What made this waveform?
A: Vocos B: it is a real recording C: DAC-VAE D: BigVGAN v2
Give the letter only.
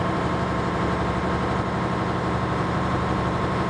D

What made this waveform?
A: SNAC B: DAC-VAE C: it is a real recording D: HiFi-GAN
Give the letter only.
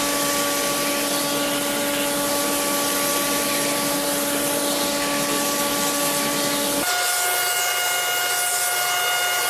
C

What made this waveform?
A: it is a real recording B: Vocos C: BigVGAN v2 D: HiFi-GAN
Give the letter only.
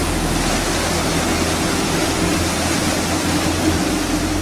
A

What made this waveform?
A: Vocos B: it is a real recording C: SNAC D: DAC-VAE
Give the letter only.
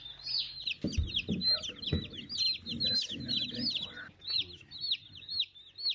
B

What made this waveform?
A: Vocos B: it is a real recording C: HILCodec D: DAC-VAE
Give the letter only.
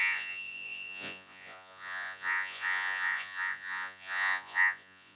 A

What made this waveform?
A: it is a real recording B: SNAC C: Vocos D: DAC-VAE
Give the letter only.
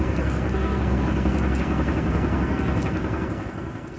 B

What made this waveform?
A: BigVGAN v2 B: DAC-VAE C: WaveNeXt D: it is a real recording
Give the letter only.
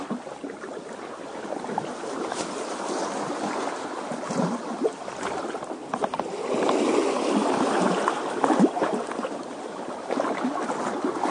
D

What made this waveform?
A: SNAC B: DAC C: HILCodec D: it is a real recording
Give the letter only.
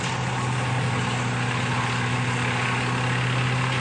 D